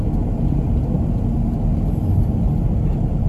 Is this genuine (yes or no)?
no